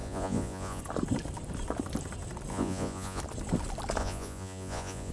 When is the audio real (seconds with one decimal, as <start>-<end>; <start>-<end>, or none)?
0.8-2.5; 3.2-4.0